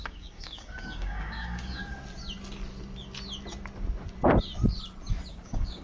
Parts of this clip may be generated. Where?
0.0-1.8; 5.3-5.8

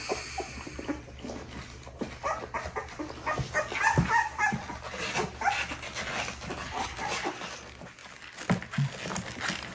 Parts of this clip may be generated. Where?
6.6-7.3

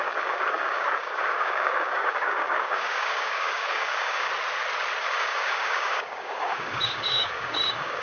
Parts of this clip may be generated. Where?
0.0-4.3; 5.0-8.0

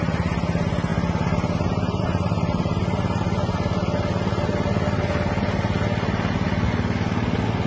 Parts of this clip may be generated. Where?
none

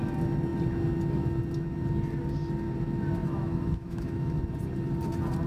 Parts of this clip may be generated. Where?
3.2-4.4

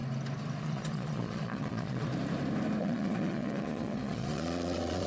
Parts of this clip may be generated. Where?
0.6-2.1; 2.8-5.1